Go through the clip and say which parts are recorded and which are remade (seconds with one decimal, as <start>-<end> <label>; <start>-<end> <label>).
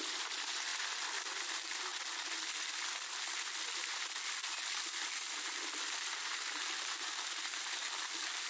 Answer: 0.0-8.5 recorded